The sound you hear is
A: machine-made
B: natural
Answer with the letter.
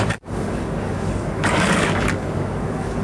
A